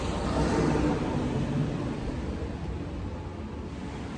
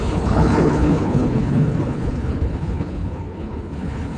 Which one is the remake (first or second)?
second